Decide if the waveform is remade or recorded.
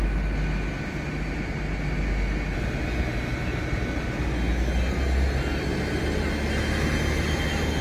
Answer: recorded